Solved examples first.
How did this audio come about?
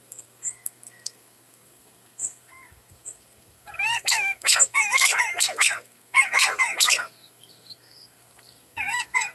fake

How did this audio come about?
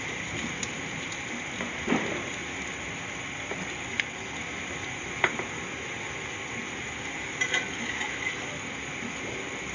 real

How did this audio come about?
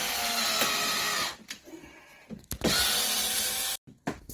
real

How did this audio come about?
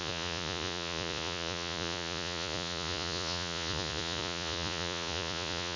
fake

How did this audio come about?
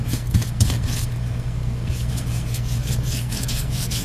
fake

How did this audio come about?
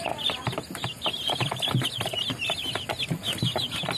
real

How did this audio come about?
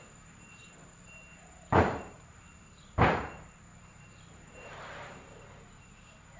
fake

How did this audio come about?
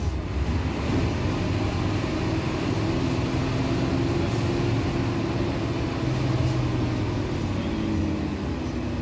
real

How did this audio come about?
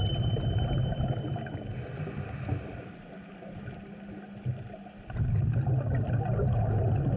real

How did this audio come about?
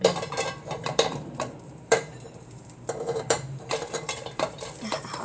fake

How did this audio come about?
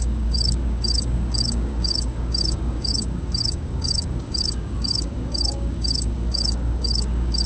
fake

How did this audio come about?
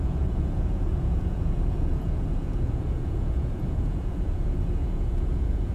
fake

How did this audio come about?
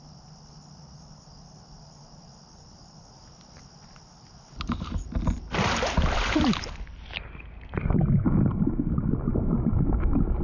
real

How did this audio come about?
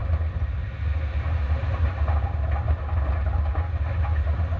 real